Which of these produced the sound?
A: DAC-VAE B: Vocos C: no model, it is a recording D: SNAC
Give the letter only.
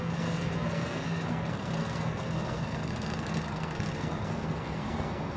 D